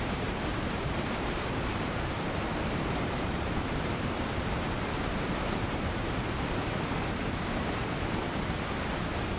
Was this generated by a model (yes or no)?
yes